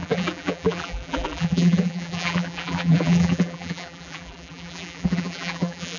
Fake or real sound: fake